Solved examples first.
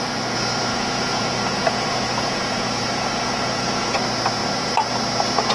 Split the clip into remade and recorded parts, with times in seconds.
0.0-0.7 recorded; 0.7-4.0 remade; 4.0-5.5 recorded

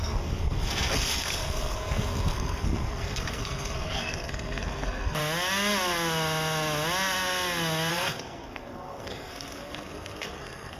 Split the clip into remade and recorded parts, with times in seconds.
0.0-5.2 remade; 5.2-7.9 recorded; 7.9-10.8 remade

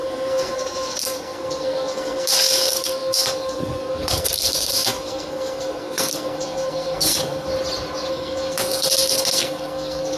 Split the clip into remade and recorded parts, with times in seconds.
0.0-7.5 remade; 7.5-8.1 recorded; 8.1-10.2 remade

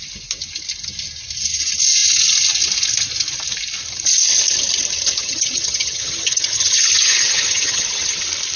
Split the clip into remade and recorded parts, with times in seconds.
0.0-5.2 recorded; 5.2-8.2 remade; 8.2-8.6 recorded

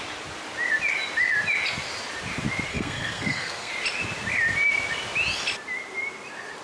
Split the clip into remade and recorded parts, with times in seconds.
0.0-2.7 recorded; 2.7-3.7 remade; 3.7-6.6 recorded

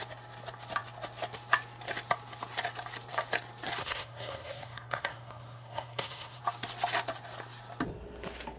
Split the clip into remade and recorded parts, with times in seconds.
0.0-3.8 recorded; 3.8-6.4 remade; 6.4-8.6 recorded

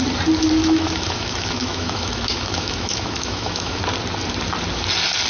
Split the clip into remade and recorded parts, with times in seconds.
0.0-0.6 recorded; 0.6-3.8 remade; 3.8-5.3 recorded